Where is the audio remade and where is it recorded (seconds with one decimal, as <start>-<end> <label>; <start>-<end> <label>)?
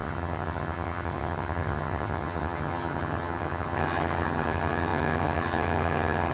0.0-6.3 remade